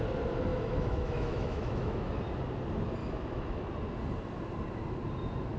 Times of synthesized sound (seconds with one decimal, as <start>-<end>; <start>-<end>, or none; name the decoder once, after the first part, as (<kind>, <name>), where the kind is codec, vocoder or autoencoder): 0.5-2.2 (autoencoder, DAC-VAE); 3.0-3.6